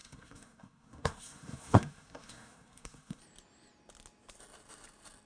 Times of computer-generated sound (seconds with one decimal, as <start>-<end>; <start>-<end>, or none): 0.0-3.2